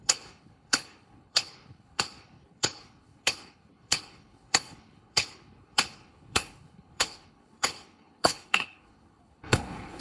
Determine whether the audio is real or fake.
fake